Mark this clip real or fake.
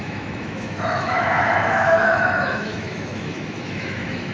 fake